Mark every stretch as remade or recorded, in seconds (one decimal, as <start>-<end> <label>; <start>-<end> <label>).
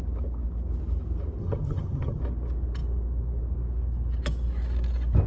0.0-1.4 recorded; 1.4-2.2 remade; 2.2-5.3 recorded